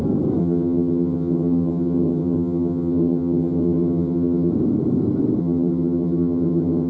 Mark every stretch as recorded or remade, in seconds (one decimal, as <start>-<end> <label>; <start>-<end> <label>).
0.0-0.4 recorded; 0.4-4.5 remade; 4.5-5.4 recorded; 5.4-6.9 remade